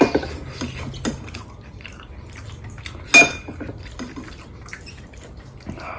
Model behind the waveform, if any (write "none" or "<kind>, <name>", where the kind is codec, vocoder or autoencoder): none